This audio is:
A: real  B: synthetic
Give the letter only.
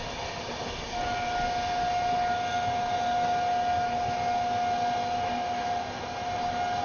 A